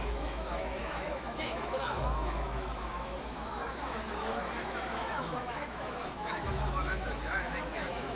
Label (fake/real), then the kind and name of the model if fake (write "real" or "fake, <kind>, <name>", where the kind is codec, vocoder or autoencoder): fake, autoencoder, DAC-VAE